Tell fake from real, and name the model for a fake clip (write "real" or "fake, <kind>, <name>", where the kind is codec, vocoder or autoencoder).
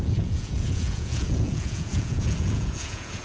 fake, vocoder, Vocos